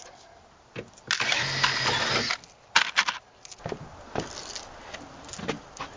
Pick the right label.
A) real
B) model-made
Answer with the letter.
A